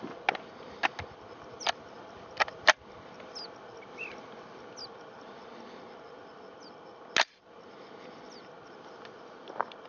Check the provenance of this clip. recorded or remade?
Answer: recorded